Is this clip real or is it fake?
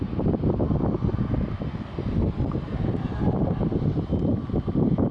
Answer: real